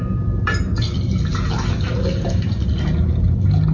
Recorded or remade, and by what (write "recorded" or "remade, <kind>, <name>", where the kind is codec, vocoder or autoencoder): recorded